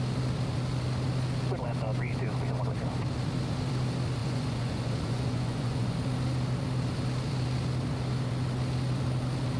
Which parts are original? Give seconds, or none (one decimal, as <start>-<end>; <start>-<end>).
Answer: 0.0-4.2; 6.0-9.6